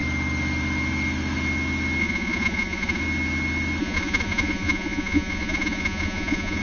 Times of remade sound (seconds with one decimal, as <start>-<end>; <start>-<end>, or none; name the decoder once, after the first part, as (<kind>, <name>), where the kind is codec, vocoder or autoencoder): 2.0-3.0 (vocoder, Vocos); 3.8-6.6